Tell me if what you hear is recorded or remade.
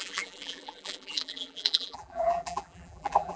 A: remade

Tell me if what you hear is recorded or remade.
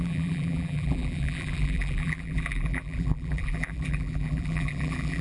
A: remade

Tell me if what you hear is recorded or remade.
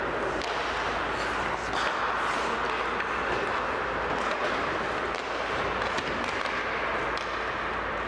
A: recorded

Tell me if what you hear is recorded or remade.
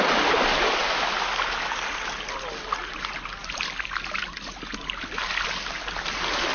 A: recorded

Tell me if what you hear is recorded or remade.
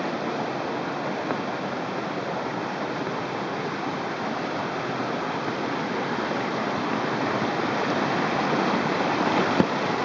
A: recorded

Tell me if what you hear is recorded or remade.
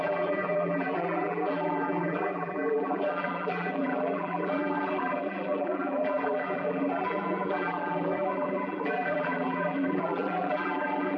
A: remade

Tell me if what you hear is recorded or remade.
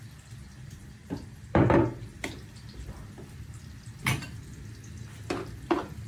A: remade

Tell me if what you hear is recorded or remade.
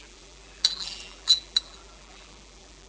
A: remade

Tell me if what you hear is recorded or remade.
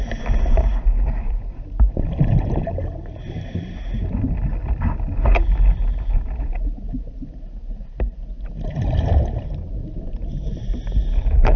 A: remade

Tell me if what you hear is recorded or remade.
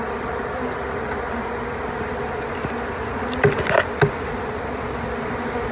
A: recorded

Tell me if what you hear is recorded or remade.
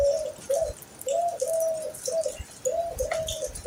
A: recorded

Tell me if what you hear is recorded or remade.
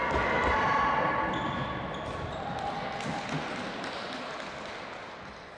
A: recorded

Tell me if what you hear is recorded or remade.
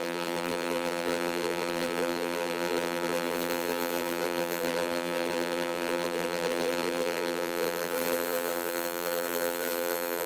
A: remade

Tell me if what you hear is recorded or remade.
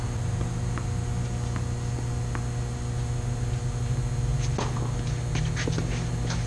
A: recorded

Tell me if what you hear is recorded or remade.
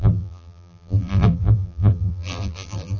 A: remade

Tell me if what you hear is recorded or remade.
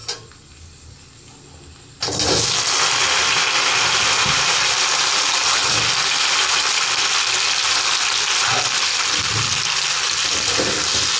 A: recorded